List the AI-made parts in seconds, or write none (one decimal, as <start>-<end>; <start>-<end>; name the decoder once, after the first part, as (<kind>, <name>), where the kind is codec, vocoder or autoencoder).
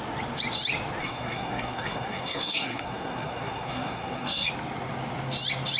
1.0-4.5 (codec, SNAC)